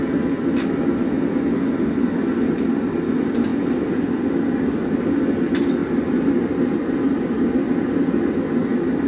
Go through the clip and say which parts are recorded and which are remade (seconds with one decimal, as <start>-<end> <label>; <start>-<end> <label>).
0.0-9.1 recorded